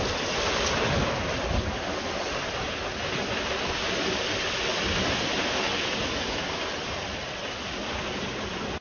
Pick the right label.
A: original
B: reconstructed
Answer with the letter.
A